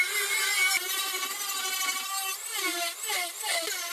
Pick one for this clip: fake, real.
real